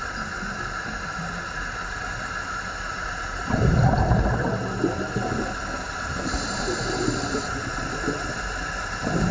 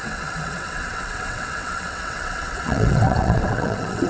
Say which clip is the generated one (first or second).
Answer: second